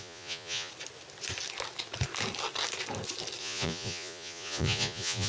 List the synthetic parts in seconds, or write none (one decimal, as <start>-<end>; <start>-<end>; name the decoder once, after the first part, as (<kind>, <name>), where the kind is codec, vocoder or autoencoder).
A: 0.0-0.7 (vocoder, Vocos); 3.4-5.3